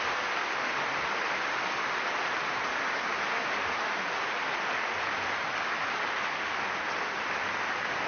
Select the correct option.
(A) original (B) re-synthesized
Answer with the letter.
A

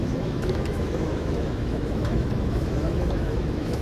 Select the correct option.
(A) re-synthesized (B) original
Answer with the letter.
A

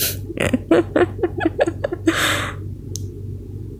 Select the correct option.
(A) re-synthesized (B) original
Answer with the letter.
B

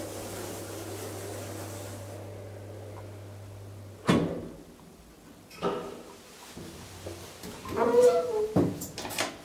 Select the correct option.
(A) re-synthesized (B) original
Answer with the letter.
B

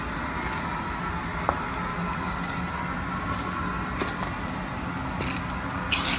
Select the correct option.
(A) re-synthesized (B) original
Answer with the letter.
B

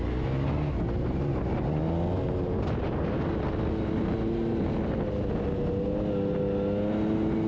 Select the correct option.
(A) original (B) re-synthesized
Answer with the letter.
A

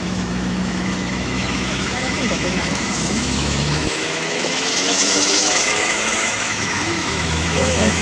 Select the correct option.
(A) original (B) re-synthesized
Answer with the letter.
B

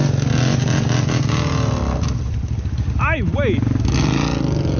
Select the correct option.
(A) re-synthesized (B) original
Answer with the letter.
B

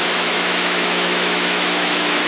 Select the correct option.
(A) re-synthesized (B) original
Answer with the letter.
A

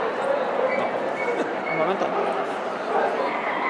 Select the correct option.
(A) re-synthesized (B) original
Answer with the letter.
B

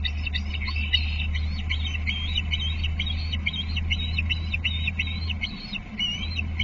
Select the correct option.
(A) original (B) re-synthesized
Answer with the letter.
A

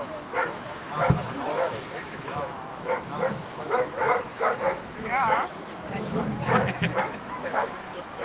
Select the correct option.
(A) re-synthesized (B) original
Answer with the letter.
A